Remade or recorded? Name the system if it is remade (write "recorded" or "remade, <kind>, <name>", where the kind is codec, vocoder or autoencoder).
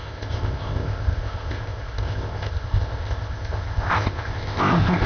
remade, codec, ZipCodec